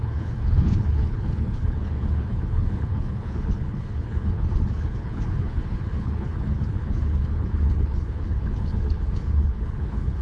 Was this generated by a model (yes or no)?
yes